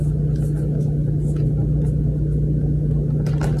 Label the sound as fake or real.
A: real